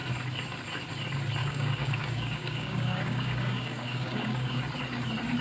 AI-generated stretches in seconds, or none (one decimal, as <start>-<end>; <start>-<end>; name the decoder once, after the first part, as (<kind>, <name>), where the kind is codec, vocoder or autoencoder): 1.4-4.6 (codec, DAC)